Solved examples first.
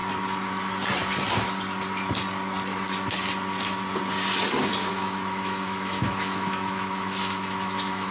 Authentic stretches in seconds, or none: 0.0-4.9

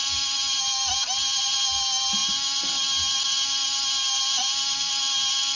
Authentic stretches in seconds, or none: 0.0-5.6

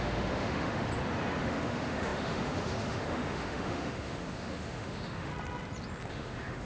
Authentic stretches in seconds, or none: 0.9-1.4; 5.3-6.1

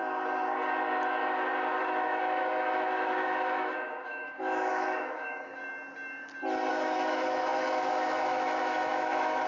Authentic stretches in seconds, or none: 0.0-1.8; 5.6-6.7

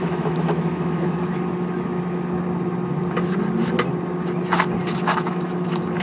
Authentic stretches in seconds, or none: 1.3-4.9

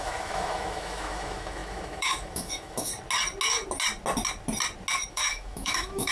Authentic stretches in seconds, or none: 2.9-5.1